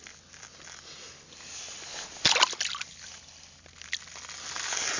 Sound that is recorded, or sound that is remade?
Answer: recorded